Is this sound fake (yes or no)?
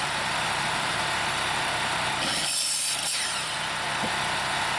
no